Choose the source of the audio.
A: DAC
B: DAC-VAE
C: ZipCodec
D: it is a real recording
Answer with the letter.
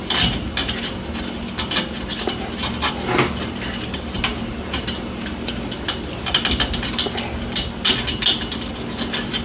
D